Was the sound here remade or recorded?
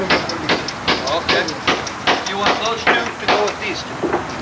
recorded